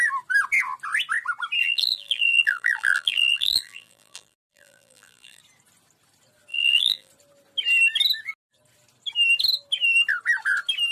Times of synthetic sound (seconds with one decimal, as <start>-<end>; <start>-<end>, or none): 1.6-5.4; 6.5-7.1